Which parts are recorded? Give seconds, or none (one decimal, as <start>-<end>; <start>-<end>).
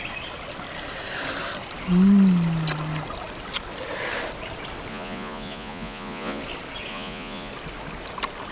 0.0-4.9; 6.4-6.9; 7.5-8.5